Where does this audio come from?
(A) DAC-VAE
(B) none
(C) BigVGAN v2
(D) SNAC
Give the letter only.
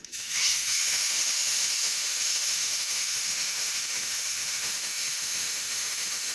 A